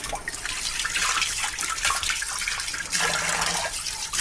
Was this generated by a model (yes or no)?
no